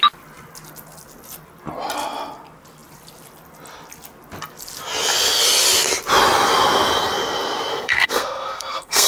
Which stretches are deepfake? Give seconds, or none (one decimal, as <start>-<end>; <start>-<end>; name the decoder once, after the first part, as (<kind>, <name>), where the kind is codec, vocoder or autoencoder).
7.7-9.1 (codec, SNAC)